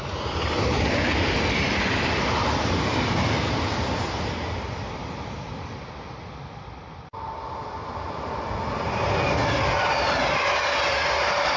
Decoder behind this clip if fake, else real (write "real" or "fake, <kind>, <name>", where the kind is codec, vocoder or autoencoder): real